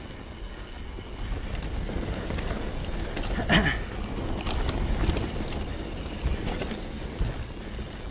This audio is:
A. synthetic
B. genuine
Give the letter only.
B